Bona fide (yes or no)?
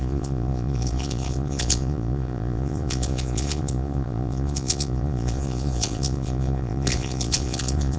no